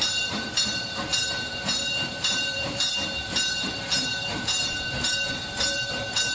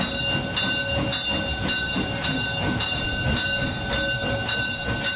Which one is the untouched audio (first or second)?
second